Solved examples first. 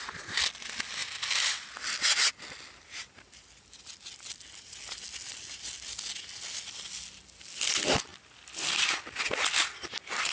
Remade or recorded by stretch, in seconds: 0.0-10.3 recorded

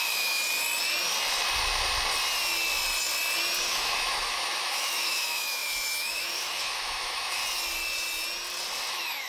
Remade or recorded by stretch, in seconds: 0.0-0.4 remade; 0.4-3.7 recorded; 3.7-7.4 remade; 7.4-8.9 recorded; 8.9-9.3 remade

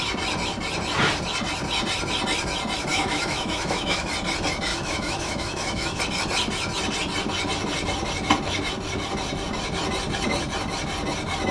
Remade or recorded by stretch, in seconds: 0.0-2.9 recorded; 2.9-4.1 remade; 4.1-4.7 recorded; 4.7-6.0 remade; 6.0-11.5 recorded

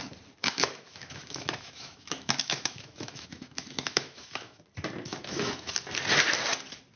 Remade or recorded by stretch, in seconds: 0.0-0.4 recorded; 0.4-4.6 remade; 4.6-5.1 recorded; 5.1-5.7 remade; 5.7-7.0 recorded

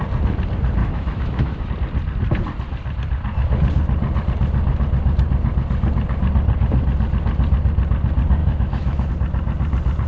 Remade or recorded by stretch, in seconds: 0.0-0.8 recorded; 0.8-1.7 remade; 1.7-8.4 recorded; 8.4-9.1 remade; 9.1-10.1 recorded

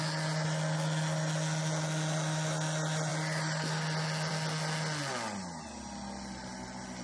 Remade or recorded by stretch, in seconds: 0.0-7.0 recorded